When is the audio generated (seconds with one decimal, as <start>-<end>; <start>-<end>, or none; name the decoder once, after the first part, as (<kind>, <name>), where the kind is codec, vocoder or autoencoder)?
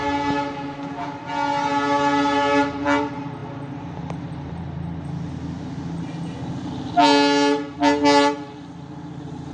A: none